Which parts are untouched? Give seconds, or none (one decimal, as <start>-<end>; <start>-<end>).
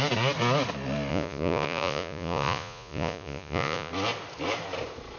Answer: 0.0-1.1; 3.9-5.2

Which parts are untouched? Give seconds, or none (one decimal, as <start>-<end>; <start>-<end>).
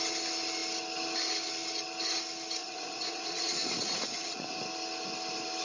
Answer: 0.0-2.6; 4.5-5.6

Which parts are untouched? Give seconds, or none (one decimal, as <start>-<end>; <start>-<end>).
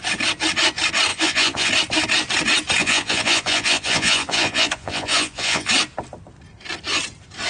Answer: 0.0-1.1; 1.7-2.8; 5.7-7.5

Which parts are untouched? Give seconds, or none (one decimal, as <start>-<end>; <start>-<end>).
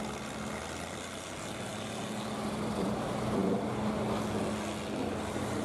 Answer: 0.0-5.6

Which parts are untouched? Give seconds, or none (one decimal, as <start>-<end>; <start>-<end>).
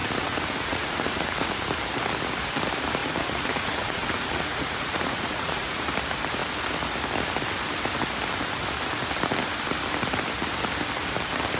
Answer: 1.5-3.0; 5.9-11.6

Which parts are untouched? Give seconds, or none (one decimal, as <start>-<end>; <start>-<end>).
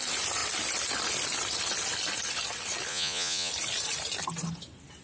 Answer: 0.0-2.9; 3.5-5.0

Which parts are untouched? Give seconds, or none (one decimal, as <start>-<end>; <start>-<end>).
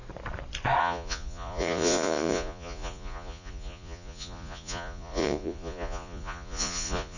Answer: 0.0-0.8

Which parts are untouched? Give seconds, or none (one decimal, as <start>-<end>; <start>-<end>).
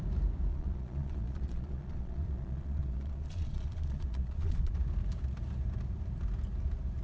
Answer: 0.0-0.5; 4.7-7.0